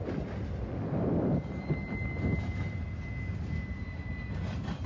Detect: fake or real real